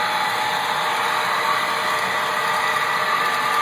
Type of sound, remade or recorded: recorded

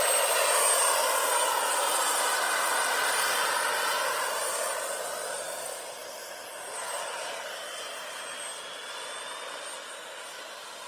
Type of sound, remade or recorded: recorded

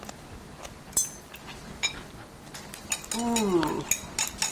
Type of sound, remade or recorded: recorded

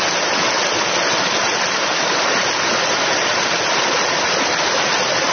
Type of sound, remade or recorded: recorded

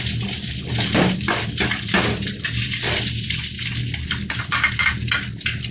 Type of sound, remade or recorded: recorded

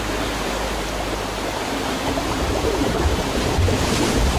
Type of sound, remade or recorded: remade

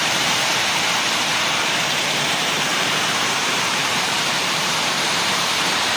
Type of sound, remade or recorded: remade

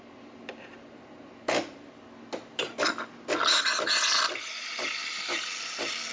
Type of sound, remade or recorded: recorded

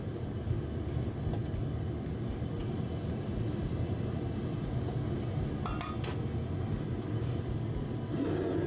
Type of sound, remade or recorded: recorded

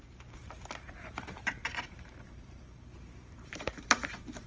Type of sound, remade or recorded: remade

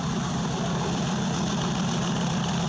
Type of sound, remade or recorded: recorded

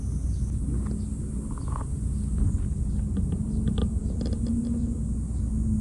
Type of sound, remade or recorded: recorded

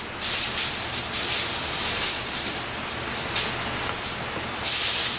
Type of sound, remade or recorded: remade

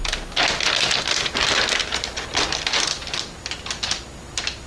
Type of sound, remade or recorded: recorded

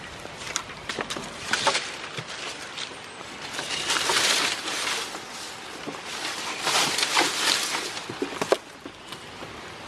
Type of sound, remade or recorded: recorded